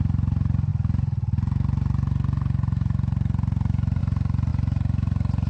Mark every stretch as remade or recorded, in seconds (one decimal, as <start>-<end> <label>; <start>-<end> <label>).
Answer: 0.0-5.5 recorded